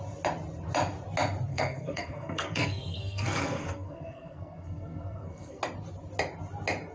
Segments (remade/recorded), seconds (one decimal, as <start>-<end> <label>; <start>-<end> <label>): 0.0-1.5 recorded; 1.5-5.6 remade; 5.6-6.9 recorded